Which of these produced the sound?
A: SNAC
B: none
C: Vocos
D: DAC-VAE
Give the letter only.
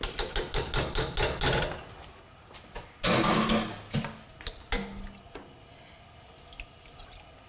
B